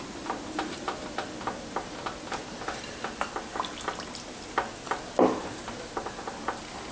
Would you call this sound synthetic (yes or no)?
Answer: no